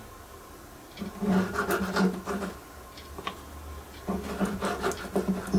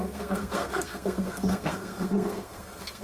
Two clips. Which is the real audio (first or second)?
first